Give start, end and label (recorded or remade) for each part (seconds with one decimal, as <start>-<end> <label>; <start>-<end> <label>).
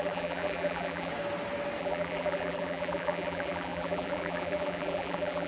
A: 0.0-1.1 remade; 1.1-1.8 recorded; 1.8-5.5 remade